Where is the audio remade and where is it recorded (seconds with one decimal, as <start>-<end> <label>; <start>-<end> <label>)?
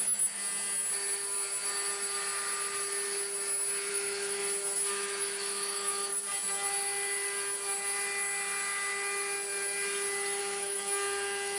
0.0-0.4 remade; 0.4-3.9 recorded; 3.9-4.4 remade; 4.4-4.9 recorded; 4.9-6.1 remade; 6.1-10.4 recorded; 10.4-11.6 remade